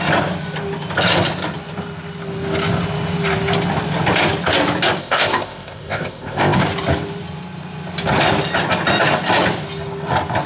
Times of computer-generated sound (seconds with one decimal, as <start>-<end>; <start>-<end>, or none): 5.0-6.6